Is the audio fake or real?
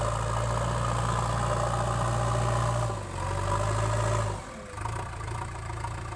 real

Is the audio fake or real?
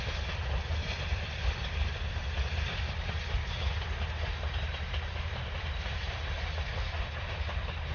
real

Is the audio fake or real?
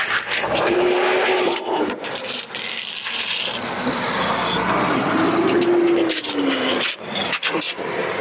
real